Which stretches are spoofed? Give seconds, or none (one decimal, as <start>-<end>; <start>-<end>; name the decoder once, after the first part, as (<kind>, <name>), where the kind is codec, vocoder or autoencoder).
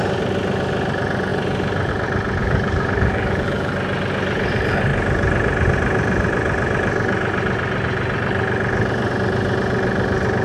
2.4-3.7 (codec, DAC)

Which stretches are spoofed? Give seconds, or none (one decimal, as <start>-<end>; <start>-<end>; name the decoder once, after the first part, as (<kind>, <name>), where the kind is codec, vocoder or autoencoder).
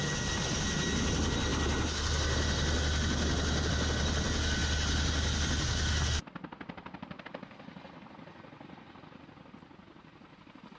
none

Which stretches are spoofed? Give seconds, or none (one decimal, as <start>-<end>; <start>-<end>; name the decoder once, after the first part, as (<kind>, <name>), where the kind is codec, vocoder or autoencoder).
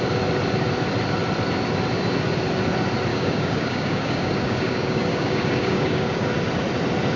3.1-6.3 (codec, DAC)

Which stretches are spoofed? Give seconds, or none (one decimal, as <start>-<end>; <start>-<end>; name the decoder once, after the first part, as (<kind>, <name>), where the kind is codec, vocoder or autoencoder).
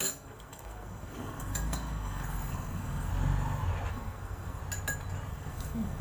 0.0-3.1 (codec, SNAC); 3.9-4.6; 5.3-6.0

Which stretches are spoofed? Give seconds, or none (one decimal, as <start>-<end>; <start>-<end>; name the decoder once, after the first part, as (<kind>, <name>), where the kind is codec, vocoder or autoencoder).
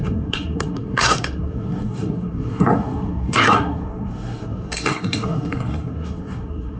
0.0-6.8 (codec, SNAC)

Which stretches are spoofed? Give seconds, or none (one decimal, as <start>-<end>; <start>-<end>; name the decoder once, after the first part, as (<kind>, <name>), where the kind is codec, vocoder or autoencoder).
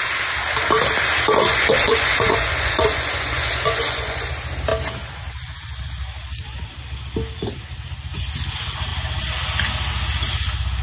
1.5-4.3 (vocoder, Vocos)